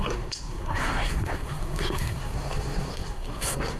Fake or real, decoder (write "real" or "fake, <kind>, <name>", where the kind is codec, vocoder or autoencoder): fake, codec, SNAC